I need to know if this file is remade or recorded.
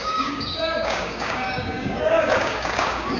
remade